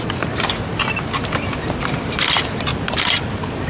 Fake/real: real